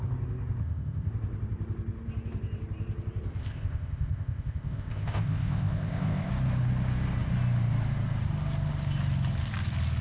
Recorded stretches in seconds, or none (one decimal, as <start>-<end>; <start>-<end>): 0.0-0.6; 1.1-3.4; 6.3-10.0